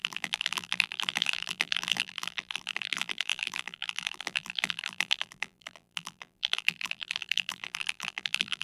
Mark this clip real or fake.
fake